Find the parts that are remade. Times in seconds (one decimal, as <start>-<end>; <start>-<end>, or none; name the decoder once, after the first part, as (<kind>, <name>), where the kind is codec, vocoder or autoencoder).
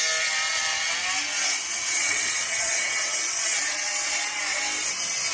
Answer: 1.7-4.4 (vocoder, WaveNeXt)